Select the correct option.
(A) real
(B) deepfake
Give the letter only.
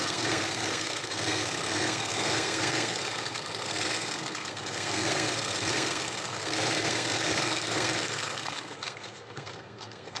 B